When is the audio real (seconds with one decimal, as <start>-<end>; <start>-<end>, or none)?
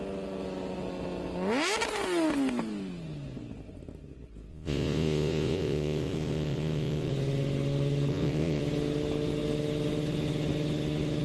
0.0-4.5; 7.1-8.1; 8.6-11.2